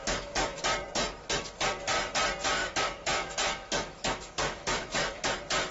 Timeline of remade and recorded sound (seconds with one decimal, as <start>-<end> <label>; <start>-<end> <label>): 0.0-0.6 remade; 0.6-2.6 recorded; 2.6-5.3 remade; 5.3-5.7 recorded

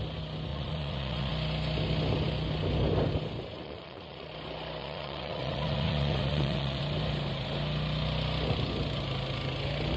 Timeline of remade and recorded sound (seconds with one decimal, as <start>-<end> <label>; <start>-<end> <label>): 0.0-0.5 recorded; 0.5-1.3 remade; 1.3-3.5 recorded; 3.5-4.3 remade; 4.3-4.8 recorded; 4.8-6.8 remade; 6.8-10.0 recorded